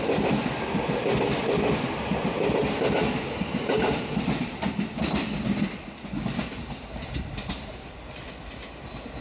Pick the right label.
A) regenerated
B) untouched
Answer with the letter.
B